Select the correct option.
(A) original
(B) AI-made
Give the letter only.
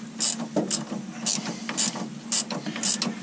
A